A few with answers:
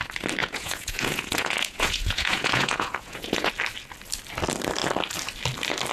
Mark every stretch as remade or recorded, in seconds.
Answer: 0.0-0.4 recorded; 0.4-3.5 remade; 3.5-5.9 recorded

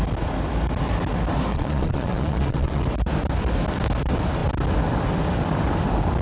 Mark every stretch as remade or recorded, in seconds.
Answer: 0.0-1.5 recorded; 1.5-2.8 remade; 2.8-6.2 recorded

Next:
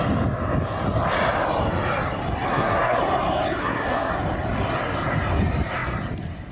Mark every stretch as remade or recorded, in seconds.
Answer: 0.0-2.5 recorded; 2.5-3.0 remade; 3.0-3.6 recorded; 3.6-4.1 remade; 4.1-6.5 recorded

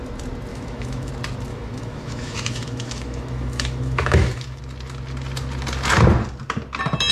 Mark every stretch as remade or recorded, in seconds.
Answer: 0.0-0.5 recorded; 0.5-1.1 remade; 1.1-1.5 recorded; 1.5-4.6 remade; 4.6-7.1 recorded

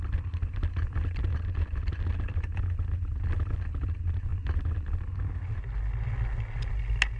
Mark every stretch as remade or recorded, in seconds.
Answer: 0.0-7.2 recorded